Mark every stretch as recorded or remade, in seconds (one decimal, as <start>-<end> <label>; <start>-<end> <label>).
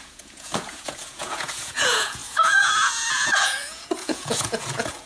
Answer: 0.0-5.1 remade